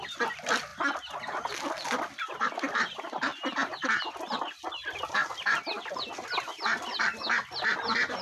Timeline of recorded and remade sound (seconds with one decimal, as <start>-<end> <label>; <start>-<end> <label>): 0.0-8.2 recorded